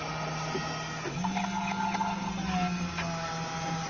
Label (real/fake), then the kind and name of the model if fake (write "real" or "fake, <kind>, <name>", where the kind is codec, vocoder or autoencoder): real